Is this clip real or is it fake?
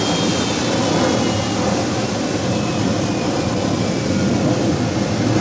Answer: real